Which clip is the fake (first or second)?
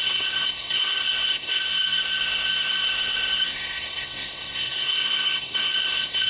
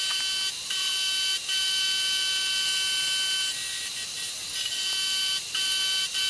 first